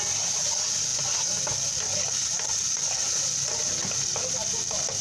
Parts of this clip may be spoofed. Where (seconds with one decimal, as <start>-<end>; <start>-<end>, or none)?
none

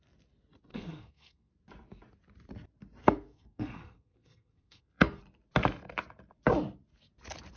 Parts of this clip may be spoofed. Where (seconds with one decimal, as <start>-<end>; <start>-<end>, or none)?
0.7-1.5; 3.0-5.2

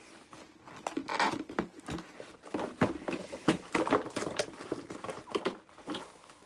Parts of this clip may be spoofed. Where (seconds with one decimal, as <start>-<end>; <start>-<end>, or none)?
none